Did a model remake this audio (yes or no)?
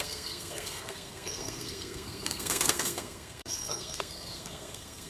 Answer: yes